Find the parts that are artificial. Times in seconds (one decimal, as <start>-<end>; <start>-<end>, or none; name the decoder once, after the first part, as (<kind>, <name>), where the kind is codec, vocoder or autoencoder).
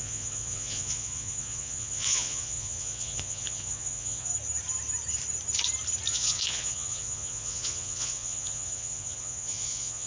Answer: 0.0-4.3 (vocoder, Vocos); 6.1-10.1